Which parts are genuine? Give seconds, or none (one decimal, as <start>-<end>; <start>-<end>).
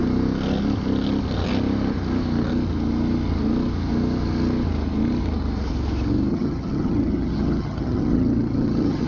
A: 0.0-6.3